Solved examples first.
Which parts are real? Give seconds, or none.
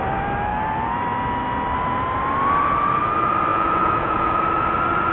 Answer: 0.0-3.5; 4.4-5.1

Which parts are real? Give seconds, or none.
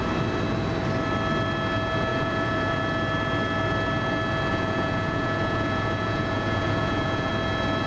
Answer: 0.0-2.1; 2.8-4.5; 7.3-7.9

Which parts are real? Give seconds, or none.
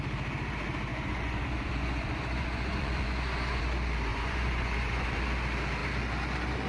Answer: 0.0-0.9; 3.6-4.1; 5.2-6.7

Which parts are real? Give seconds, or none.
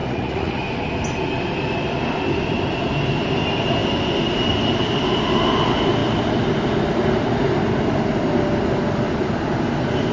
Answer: 0.6-10.1